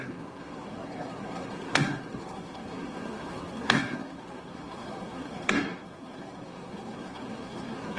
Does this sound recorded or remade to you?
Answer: remade